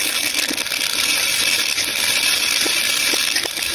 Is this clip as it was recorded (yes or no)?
yes